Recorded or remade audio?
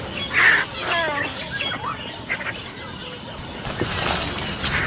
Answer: recorded